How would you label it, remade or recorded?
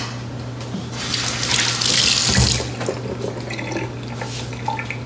recorded